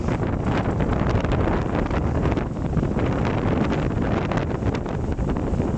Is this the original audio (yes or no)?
yes